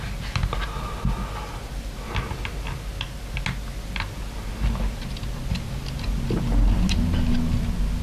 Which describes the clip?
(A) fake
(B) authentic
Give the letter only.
B